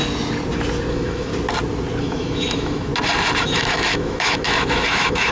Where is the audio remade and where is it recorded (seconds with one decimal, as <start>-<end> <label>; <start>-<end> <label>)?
0.0-0.9 recorded; 0.9-1.3 remade; 1.3-2.0 recorded; 2.0-2.9 remade; 2.9-3.4 recorded; 3.4-5.3 remade